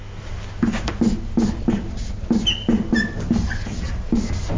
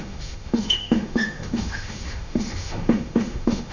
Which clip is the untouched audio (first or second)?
first